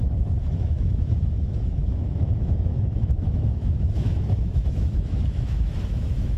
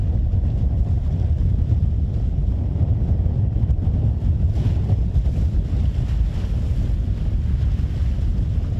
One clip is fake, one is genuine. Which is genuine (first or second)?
second